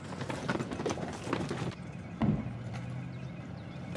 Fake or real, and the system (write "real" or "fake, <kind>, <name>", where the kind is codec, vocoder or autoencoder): real